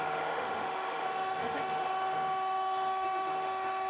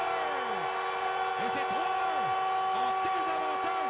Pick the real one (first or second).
second